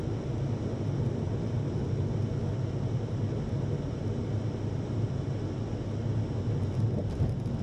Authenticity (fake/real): real